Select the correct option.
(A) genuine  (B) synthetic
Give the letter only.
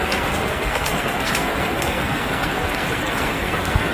B